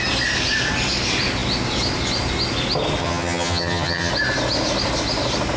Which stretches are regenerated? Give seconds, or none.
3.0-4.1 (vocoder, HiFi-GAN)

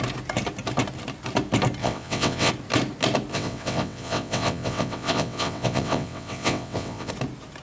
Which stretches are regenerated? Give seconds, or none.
1.8-2.5 (vocoder, WaveNeXt); 3.3-7.1

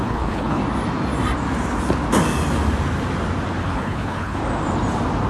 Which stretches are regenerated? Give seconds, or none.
0.0-0.6 (codec, HILCodec); 3.6-4.4

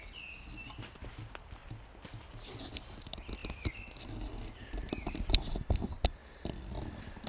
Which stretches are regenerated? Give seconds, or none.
none

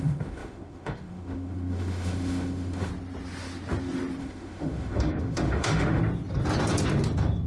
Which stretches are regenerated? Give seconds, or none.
0.0-2.9 (autoencoder, DAC-VAE); 4.2-6.0

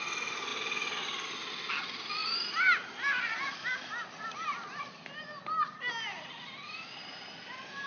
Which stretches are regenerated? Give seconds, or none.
none

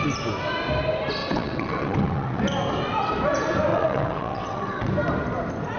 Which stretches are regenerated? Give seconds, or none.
1.2-2.4 (vocoder, WaveNeXt); 3.7-4.9

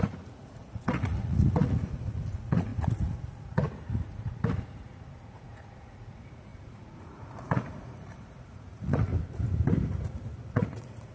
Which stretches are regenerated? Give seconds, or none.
0.0-9.1 (vocoder, Vocos); 10.5-11.1